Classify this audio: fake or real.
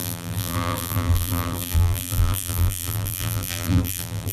fake